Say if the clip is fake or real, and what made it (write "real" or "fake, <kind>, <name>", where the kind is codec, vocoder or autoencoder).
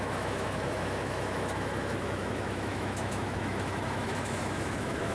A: fake, autoencoder, DAC-VAE